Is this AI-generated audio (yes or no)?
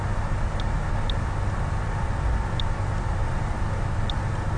no